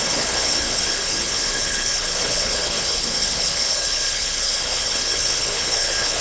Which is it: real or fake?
fake